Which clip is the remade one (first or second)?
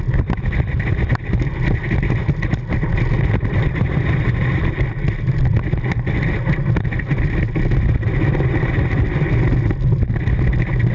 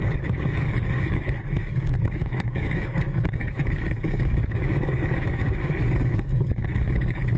second